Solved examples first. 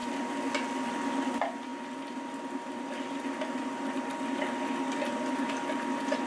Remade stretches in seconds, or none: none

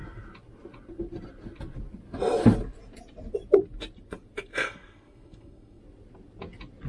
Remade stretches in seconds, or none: 4.5-5.8 (codec, SNAC)